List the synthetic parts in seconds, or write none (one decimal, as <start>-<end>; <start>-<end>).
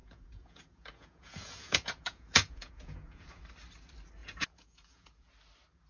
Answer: 0.0-3.4; 4.2-5.3